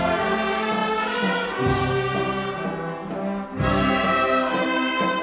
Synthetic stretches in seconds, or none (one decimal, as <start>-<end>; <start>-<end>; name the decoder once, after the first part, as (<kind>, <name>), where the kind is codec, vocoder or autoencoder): none